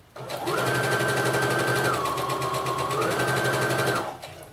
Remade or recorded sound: recorded